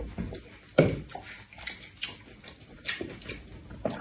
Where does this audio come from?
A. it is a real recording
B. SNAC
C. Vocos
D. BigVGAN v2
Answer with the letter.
A